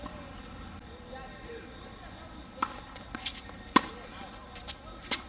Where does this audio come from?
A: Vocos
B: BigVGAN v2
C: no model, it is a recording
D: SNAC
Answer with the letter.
C